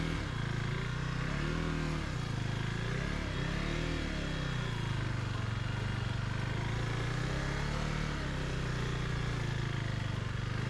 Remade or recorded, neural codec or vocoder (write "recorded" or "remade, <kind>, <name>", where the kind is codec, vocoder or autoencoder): recorded